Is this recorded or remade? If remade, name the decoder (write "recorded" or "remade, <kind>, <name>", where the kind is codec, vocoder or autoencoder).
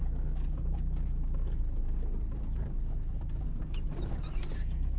recorded